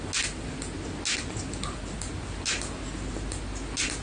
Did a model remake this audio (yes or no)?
no